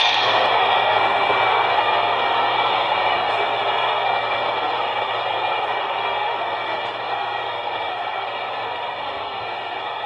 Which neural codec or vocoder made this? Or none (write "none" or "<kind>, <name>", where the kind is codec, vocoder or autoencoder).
codec, SNAC